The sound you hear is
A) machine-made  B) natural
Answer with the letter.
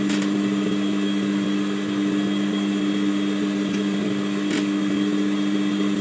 B